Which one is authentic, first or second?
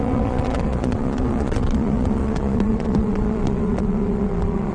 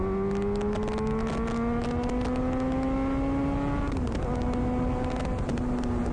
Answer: second